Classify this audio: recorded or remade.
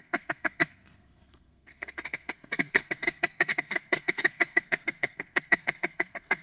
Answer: remade